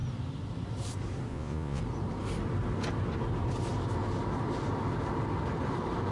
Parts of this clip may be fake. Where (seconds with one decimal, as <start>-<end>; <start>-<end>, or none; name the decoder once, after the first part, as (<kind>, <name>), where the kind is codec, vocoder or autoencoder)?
1.3-1.8 (vocoder, Vocos)